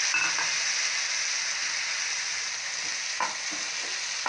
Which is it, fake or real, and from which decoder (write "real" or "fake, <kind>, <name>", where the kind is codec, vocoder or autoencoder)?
real